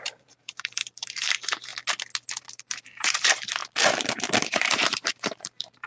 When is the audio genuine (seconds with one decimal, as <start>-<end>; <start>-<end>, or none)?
1.7-2.5; 3.6-4.6